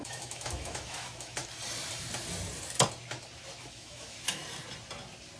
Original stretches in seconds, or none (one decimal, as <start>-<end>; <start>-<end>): 1.4-3.6; 4.4-5.4